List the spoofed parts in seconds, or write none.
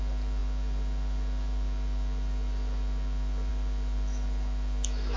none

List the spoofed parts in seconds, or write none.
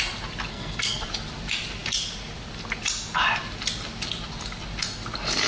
0.5-1.1 (codec, SNAC)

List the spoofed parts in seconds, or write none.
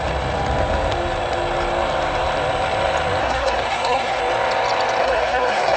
3.2-4.2 (codec, SNAC); 5.0-5.8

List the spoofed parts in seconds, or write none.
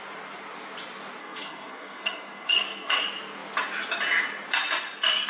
1.2-3.0 (codec, SNAC)